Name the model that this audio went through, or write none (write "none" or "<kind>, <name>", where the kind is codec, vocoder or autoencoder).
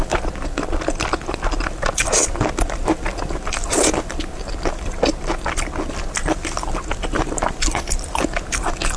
none